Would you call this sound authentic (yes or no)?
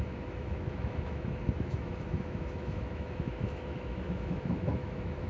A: no